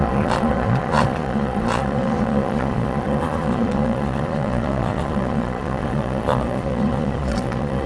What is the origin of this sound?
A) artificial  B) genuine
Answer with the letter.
A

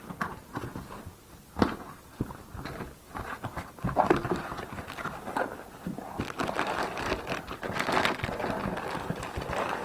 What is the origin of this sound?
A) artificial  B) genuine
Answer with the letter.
B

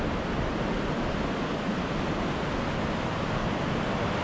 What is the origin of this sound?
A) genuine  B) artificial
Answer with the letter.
A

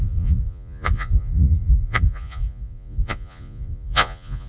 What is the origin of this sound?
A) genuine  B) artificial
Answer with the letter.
B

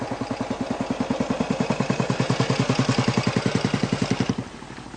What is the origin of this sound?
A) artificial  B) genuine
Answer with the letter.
B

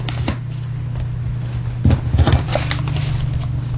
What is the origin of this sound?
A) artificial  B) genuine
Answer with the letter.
B